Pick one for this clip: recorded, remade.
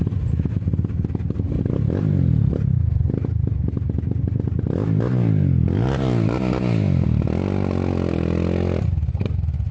recorded